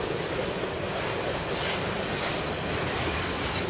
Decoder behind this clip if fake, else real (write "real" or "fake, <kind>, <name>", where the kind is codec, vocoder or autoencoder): real